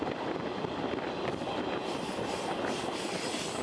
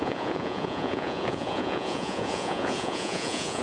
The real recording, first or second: first